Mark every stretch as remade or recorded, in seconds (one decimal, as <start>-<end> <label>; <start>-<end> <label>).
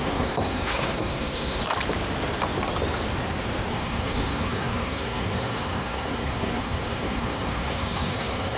0.0-1.6 remade; 1.6-3.7 recorded; 3.7-8.6 remade